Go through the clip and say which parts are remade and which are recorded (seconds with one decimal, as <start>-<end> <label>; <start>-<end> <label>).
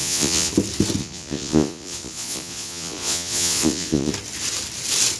0.0-0.5 remade; 0.5-1.0 recorded; 1.0-4.1 remade; 4.1-5.2 recorded